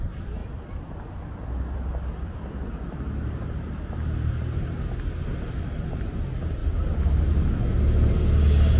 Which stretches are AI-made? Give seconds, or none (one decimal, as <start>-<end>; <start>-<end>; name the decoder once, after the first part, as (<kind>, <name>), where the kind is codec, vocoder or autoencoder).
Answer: 0.4-2.8 (vocoder, BigVGAN v2)